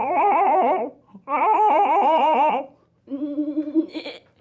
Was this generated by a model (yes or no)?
yes